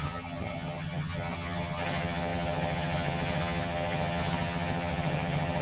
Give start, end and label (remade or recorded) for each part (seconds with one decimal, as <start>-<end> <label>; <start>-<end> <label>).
0.0-5.6 remade